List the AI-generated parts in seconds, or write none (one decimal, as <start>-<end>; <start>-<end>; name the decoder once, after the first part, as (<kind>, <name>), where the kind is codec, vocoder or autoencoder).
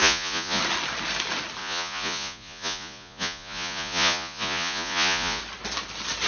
0.0-0.6 (vocoder, Vocos); 1.6-5.4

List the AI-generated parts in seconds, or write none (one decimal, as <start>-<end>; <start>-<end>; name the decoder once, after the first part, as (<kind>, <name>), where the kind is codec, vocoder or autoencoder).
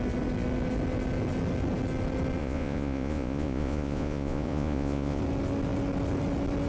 2.4-5.2 (vocoder, Vocos)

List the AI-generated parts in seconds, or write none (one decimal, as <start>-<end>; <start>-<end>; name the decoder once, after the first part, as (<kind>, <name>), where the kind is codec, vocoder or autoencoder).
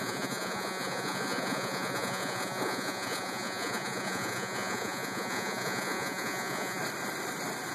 0.0-6.8 (vocoder, Vocos)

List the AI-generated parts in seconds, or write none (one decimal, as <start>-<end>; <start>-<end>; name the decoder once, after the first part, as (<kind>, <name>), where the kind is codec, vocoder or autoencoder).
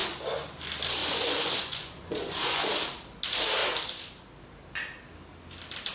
1.0-2.6 (vocoder, Vocos)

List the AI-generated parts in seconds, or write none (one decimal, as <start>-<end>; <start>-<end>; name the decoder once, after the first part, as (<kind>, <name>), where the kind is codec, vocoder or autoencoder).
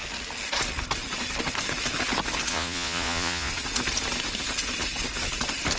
2.5-3.5 (vocoder, Vocos)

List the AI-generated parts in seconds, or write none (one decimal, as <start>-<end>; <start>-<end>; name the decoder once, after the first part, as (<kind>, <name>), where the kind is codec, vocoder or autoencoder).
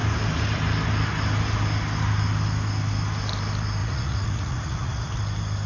3.8-5.2 (vocoder, Vocos)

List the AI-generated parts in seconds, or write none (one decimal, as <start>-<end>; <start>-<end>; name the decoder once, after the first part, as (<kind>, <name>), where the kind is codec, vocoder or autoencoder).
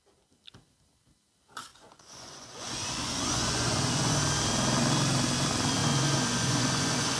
1.7-4.2 (vocoder, Vocos); 5.8-7.2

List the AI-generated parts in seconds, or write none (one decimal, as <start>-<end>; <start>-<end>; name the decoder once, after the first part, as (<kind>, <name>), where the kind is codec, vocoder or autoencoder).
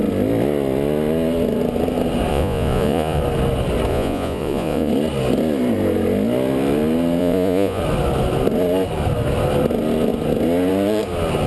2.3-3.2 (vocoder, Vocos); 3.9-4.9; 7.2-7.8